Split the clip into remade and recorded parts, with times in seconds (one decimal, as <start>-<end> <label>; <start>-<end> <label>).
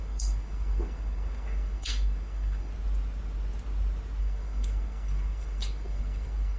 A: 0.0-2.7 remade; 2.7-4.2 recorded; 4.2-6.6 remade